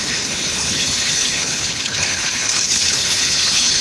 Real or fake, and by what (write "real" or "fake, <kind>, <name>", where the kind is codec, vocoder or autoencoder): fake, codec, HILCodec